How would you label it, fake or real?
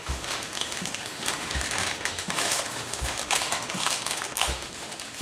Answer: fake